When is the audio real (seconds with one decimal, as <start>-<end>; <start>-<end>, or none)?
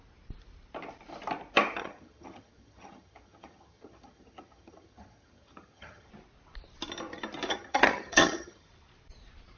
0.0-1.8; 6.1-7.5; 8.7-9.6